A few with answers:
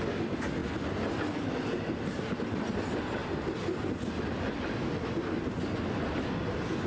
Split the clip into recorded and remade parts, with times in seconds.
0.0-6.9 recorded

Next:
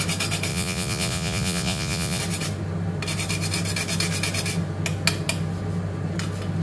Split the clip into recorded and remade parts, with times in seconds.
0.0-0.5 recorded; 0.5-2.2 remade; 2.2-6.6 recorded

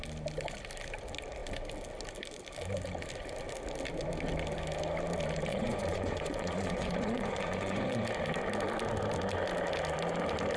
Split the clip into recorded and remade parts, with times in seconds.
0.0-5.5 recorded; 5.5-8.0 remade; 8.0-10.6 recorded

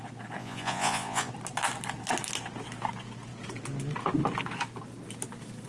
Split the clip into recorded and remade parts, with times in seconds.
0.0-0.4 recorded; 0.4-1.3 remade; 1.3-5.7 recorded

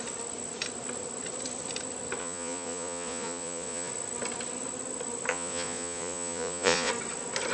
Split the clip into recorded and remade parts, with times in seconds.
0.0-2.2 recorded; 2.2-3.9 remade; 3.9-5.3 recorded; 5.3-6.9 remade; 6.9-7.5 recorded